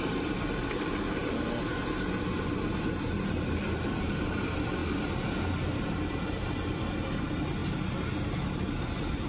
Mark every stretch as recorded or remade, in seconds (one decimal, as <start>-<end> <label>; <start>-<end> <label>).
0.0-9.3 recorded